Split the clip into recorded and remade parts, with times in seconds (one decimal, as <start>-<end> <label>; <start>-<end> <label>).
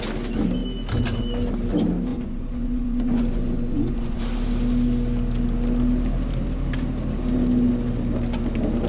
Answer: 0.0-2.1 recorded; 2.1-4.2 remade; 4.2-8.9 recorded